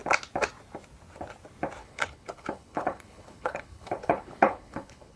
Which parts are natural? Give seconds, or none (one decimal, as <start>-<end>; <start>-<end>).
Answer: 0.0-1.8